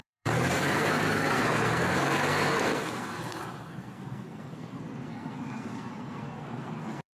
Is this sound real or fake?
fake